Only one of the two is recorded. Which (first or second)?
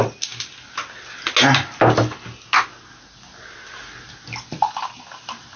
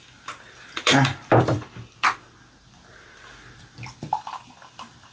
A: first